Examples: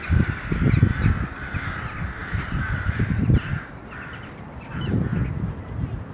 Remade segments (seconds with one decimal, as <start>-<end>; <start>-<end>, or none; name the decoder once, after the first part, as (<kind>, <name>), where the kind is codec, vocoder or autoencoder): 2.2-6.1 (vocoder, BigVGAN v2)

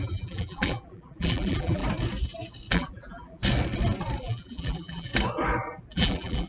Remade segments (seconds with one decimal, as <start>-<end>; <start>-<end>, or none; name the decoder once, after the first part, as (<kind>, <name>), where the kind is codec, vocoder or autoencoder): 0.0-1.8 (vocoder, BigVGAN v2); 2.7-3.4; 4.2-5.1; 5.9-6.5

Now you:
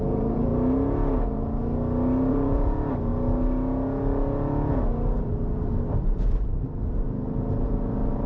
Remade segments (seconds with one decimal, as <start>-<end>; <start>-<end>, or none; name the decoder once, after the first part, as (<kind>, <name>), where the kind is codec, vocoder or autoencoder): 0.0-0.5 (vocoder, BigVGAN v2); 2.3-3.1; 5.2-8.3